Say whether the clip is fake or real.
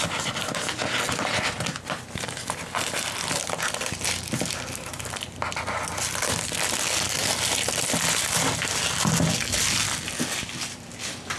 real